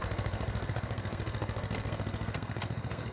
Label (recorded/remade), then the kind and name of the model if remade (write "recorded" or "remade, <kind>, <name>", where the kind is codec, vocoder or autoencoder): remade, codec, SNAC